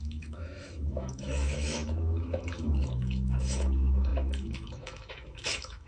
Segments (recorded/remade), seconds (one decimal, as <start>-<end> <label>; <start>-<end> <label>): 0.0-5.9 remade